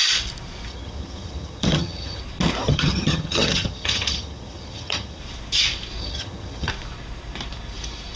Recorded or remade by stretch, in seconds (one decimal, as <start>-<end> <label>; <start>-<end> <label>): 0.0-0.7 recorded; 0.7-2.2 remade; 2.2-2.6 recorded; 2.6-5.2 remade; 5.2-6.0 recorded; 6.0-6.7 remade; 6.7-8.2 recorded